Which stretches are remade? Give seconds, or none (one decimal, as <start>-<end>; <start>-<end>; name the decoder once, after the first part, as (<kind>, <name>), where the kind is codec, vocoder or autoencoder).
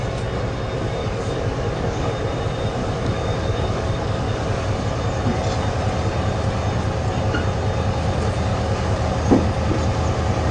1.0-2.1 (codec, DAC); 2.8-4.8; 8.5-9.1